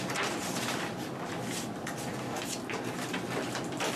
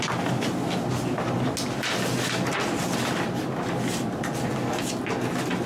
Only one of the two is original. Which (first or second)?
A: second